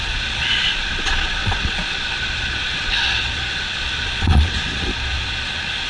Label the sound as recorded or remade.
remade